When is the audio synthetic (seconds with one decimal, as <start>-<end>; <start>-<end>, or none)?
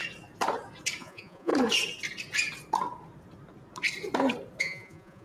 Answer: 1.0-1.5; 4.6-5.2